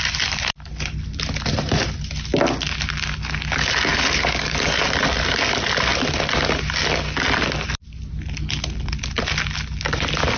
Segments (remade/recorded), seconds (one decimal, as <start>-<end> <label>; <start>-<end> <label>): 0.0-3.9 recorded; 3.9-4.8 remade; 4.8-10.4 recorded